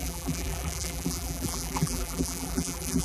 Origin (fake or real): fake